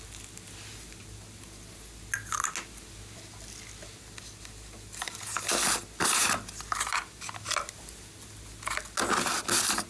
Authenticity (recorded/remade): recorded